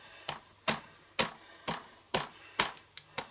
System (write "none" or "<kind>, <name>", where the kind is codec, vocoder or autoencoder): none